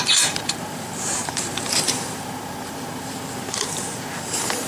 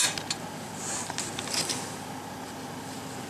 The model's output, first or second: first